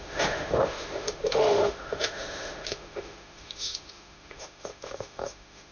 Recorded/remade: remade